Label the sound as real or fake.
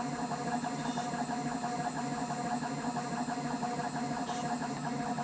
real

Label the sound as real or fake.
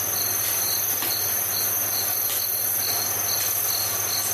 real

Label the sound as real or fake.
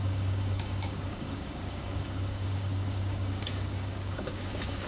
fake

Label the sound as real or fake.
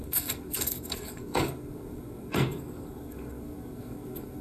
fake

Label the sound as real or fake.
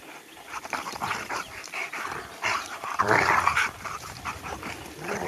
fake